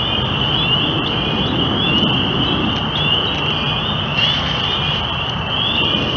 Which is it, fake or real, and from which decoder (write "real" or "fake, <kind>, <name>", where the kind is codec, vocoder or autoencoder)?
real